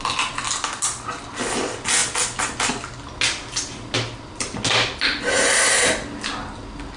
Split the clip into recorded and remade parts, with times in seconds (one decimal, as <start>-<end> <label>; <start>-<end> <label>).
0.0-7.0 recorded